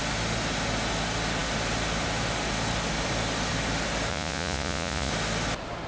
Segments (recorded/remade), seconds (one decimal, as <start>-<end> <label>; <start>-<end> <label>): 0.0-4.1 recorded; 4.1-5.1 remade; 5.1-5.9 recorded